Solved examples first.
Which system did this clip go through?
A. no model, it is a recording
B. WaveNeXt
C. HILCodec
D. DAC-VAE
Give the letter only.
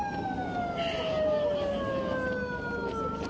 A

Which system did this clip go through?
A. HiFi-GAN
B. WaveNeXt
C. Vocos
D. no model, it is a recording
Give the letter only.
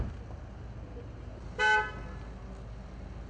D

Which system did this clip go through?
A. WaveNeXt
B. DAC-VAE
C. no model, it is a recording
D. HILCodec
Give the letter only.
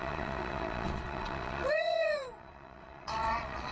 A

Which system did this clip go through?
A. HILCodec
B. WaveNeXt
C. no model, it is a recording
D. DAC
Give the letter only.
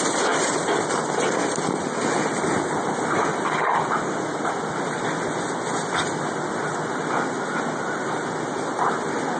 C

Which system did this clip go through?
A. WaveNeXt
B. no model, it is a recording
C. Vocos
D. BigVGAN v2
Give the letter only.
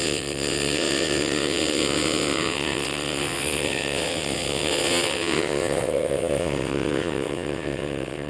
A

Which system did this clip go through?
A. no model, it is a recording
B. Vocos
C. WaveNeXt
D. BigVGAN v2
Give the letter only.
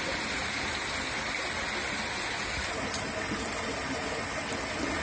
A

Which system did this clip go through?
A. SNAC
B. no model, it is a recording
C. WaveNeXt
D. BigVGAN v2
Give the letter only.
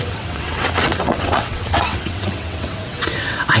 C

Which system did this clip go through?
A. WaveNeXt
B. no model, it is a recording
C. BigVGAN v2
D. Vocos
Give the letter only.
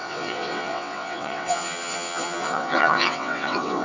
A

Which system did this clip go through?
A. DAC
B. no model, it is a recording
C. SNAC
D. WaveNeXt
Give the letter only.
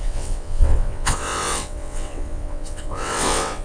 D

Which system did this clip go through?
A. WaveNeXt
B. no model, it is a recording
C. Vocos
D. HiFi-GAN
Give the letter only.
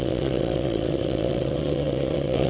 A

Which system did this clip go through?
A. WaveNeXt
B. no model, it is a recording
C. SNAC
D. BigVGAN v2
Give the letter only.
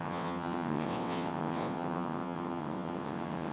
A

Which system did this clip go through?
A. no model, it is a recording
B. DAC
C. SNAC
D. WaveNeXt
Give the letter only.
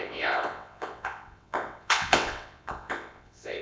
D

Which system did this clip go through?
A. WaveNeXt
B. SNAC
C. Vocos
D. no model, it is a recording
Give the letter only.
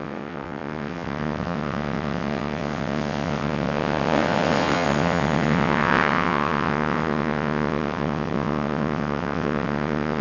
A